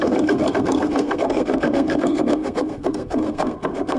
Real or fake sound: fake